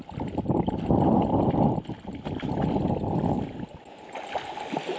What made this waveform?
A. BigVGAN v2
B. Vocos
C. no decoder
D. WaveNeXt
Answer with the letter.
C